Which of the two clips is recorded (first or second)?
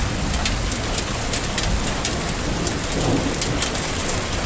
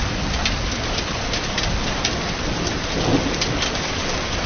first